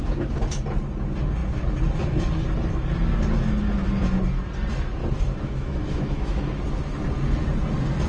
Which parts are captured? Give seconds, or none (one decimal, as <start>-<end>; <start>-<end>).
0.0-5.0; 6.6-8.1